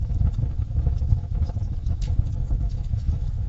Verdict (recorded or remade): remade